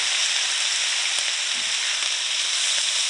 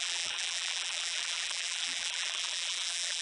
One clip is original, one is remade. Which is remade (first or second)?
second